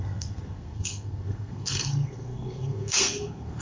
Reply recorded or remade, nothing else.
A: remade